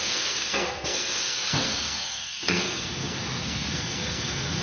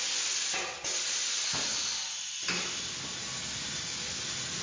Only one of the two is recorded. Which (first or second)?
second